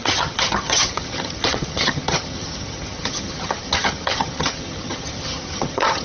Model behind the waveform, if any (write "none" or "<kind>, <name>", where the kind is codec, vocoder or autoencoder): vocoder, HiFi-GAN